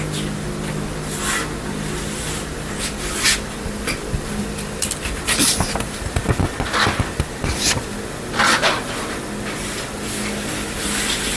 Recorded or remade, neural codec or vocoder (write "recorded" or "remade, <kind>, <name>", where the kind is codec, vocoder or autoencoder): recorded